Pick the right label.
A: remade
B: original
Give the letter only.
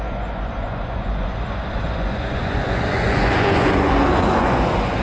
A